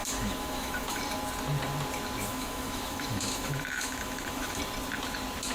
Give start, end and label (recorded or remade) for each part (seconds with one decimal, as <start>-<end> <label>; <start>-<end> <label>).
0.0-1.0 remade; 1.0-2.3 recorded; 2.3-4.6 remade; 4.6-5.5 recorded